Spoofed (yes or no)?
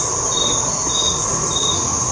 no